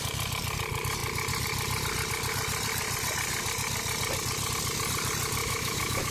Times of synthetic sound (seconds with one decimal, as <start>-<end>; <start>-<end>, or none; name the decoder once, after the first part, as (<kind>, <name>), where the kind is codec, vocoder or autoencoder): 5.4-6.1 (autoencoder, DAC-VAE)